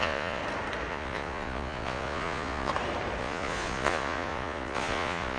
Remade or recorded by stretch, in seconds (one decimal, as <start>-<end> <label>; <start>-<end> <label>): 0.0-0.4 remade; 0.4-0.9 recorded; 0.9-2.7 remade; 2.7-3.2 recorded; 3.2-5.4 remade